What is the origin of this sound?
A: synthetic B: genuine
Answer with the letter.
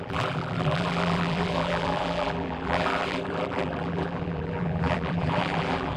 A